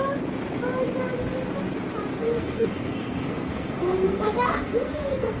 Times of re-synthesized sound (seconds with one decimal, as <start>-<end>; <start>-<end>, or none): 2.2-5.4